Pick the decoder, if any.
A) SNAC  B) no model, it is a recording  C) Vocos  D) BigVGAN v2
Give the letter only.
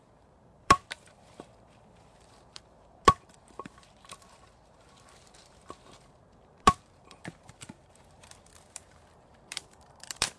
D